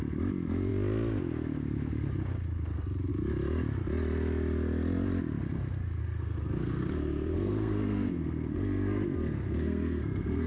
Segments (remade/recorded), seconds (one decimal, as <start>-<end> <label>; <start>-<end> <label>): 0.0-6.0 recorded; 6.0-10.5 remade